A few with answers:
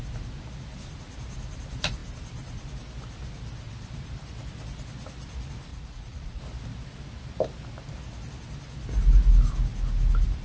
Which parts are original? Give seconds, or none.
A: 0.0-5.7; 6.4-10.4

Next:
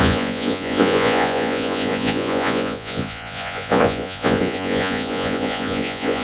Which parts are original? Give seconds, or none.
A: none

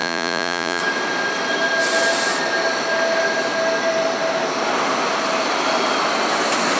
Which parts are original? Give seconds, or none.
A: 0.8-6.8

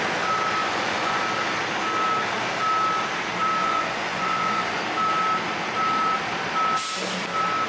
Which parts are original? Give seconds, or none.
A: 0.0-0.6; 1.2-3.6; 4.8-7.7